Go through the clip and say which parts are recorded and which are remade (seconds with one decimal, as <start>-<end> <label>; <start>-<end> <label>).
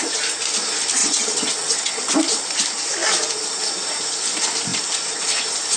0.0-1.0 recorded; 1.0-2.0 remade; 2.0-5.8 recorded